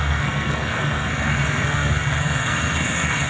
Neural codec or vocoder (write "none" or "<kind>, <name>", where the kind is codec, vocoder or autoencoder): codec, SNAC